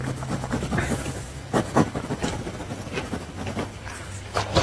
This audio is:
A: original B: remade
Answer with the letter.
B